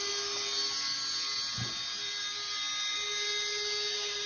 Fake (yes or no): no